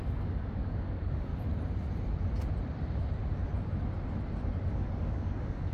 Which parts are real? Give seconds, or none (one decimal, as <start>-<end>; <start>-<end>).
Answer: 1.3-4.7